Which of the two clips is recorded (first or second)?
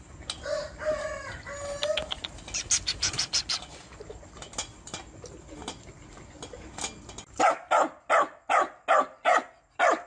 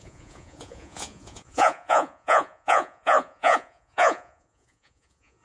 first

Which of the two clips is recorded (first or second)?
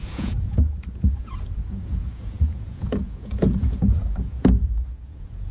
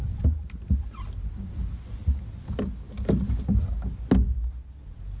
second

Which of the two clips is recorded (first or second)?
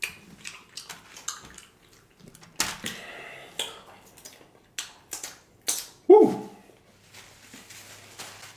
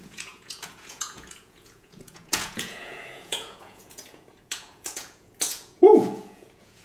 first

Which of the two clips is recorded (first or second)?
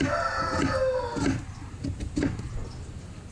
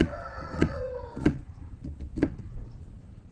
first